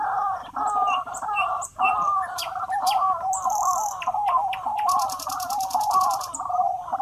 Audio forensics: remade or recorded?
remade